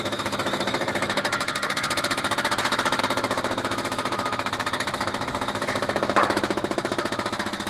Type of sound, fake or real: fake